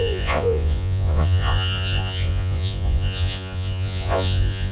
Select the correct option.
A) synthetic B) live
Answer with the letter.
A